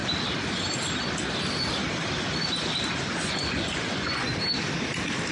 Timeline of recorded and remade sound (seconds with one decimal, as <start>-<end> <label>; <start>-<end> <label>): 0.0-3.2 recorded; 3.2-4.3 remade; 4.3-5.3 recorded